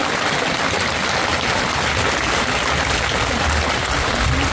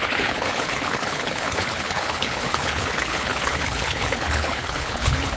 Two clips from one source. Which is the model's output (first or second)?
second